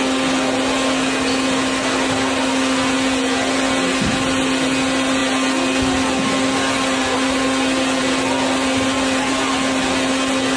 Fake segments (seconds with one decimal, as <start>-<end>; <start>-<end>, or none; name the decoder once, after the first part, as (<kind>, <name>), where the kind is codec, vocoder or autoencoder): none